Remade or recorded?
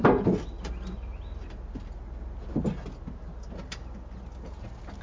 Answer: recorded